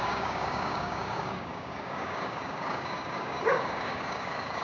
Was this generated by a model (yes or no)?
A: yes